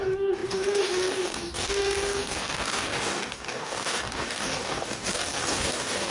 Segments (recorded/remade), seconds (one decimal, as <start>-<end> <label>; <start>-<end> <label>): 0.0-6.1 remade